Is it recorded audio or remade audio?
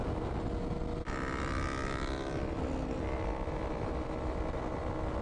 recorded